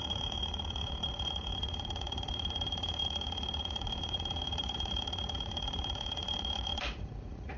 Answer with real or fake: fake